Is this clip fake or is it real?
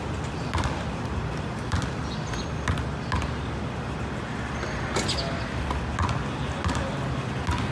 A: real